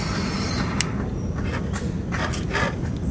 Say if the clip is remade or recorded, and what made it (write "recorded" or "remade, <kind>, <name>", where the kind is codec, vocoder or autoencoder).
recorded